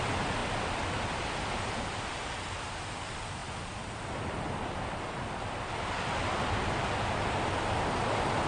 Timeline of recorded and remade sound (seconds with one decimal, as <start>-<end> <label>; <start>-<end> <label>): 0.0-8.5 recorded